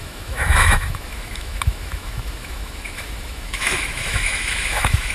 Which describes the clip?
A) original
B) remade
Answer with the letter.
B